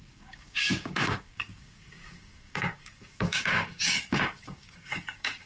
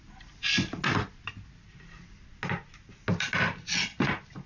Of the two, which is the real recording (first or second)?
second